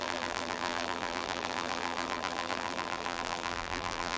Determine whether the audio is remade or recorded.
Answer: remade